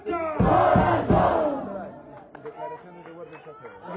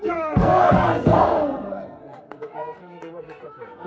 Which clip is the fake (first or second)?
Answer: second